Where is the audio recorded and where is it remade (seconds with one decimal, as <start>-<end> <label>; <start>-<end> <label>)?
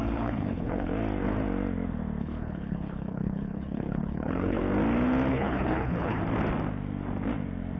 0.0-0.9 remade; 0.9-2.2 recorded; 2.2-4.6 remade; 4.6-5.3 recorded; 5.3-6.2 remade; 6.2-7.8 recorded